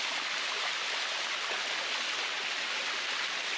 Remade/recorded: recorded